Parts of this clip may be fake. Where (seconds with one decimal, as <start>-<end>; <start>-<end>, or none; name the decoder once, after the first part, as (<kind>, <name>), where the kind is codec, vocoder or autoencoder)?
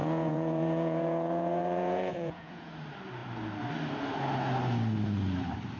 0.0-2.7 (vocoder, Vocos)